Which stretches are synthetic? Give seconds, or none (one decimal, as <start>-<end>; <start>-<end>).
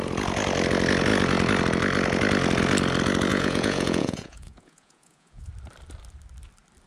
3.3-5.5